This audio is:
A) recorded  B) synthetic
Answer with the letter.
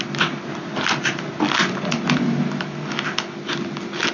A